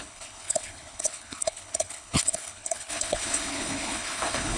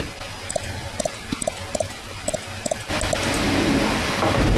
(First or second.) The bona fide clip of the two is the second